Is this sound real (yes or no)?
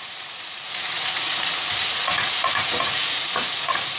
no